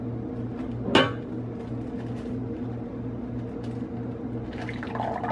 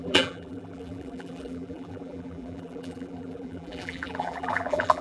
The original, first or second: first